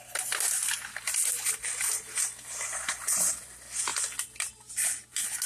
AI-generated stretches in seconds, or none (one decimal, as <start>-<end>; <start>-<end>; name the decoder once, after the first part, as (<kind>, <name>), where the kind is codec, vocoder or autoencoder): none